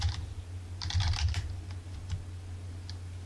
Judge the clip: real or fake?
real